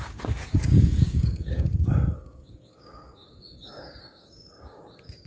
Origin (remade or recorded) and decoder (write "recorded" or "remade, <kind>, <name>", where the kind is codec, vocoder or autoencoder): remade, codec, DAC